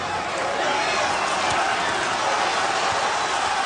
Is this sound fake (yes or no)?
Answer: no